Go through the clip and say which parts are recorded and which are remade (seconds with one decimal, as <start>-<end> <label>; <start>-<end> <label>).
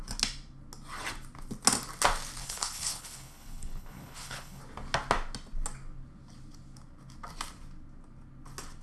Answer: 0.0-2.4 recorded; 2.4-4.6 remade; 4.6-8.8 recorded